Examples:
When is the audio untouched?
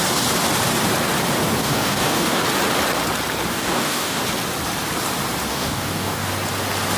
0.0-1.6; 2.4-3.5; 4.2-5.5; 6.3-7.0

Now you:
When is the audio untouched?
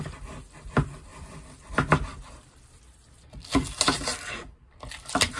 0.0-1.1; 1.7-2.1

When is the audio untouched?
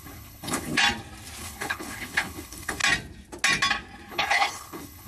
0.8-1.4; 2.8-4.1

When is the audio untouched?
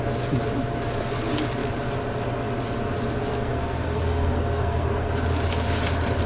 0.0-3.3; 5.1-6.3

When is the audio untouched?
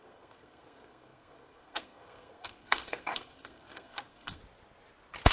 4.4-5.3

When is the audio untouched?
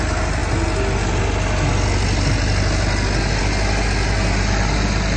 0.0-5.2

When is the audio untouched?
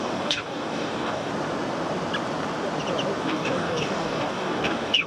1.3-3.2